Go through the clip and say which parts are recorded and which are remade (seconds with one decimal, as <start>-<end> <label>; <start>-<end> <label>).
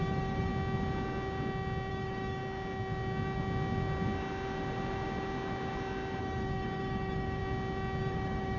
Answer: 0.0-0.5 remade; 0.5-1.9 recorded; 1.9-2.4 remade; 2.4-6.2 recorded; 6.2-7.4 remade; 7.4-8.0 recorded; 8.0-8.6 remade